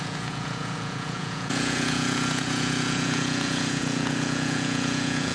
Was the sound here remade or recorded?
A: remade